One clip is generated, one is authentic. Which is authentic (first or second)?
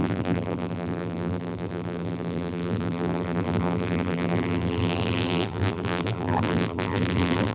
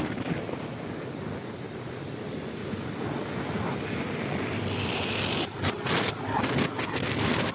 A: second